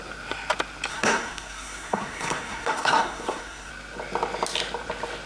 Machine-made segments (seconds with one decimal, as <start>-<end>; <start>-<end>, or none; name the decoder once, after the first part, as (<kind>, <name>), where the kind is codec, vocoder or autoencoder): 0.9-3.7 (codec, SNAC)